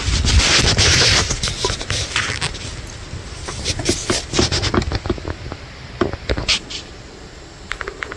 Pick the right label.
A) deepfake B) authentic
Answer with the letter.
B